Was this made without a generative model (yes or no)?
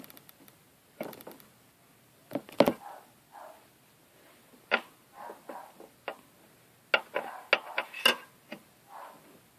yes